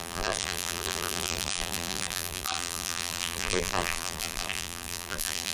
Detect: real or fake fake